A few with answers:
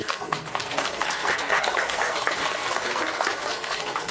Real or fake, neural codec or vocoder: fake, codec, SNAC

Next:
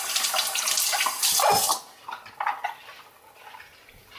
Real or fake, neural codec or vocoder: real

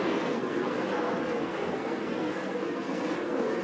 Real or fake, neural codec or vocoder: fake, codec, SNAC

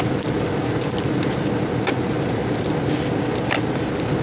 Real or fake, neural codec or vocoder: real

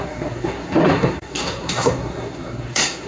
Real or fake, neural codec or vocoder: fake, codec, SNAC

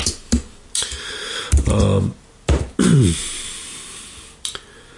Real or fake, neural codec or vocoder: real